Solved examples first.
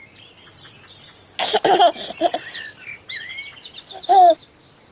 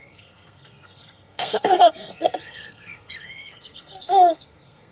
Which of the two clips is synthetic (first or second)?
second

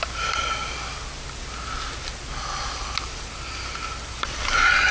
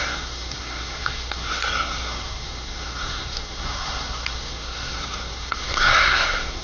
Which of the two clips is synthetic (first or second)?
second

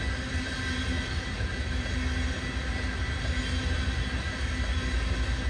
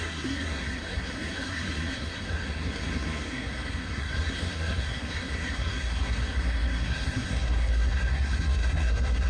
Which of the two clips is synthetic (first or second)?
second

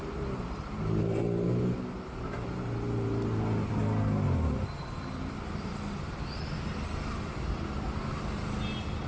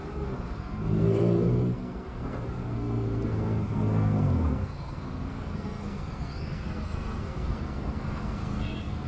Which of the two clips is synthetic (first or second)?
second